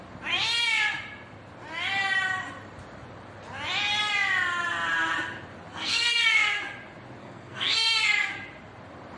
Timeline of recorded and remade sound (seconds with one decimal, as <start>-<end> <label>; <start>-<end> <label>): 0.0-5.7 recorded; 5.7-6.6 remade; 6.6-7.2 recorded; 7.2-8.3 remade; 8.3-9.2 recorded